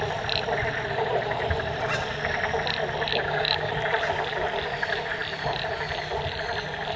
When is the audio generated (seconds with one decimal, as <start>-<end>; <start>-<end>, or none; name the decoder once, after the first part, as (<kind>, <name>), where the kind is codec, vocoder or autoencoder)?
3.1-3.7 (codec, DAC)